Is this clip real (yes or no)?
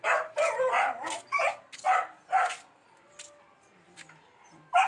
yes